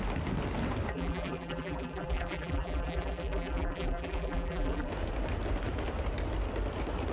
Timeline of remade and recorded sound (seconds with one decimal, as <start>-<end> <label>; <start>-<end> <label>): 0.0-0.9 recorded; 0.9-4.9 remade; 4.9-7.1 recorded